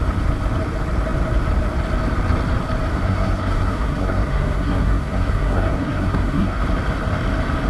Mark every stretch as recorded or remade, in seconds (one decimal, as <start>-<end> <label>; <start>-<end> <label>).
0.0-2.9 recorded; 2.9-6.6 remade; 6.6-7.7 recorded